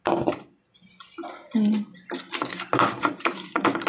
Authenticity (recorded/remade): recorded